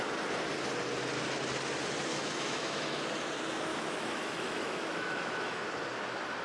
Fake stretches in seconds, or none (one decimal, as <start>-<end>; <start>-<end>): 2.1-3.0; 3.7-5.6